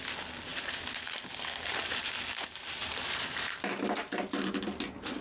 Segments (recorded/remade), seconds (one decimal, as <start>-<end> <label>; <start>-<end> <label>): 0.0-0.5 recorded; 0.5-3.0 remade; 3.0-5.2 recorded